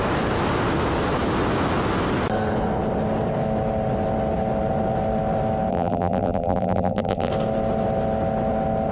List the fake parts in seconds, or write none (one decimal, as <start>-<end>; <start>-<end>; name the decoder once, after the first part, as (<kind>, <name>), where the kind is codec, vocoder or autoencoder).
5.7-7.3 (vocoder, BigVGAN v2)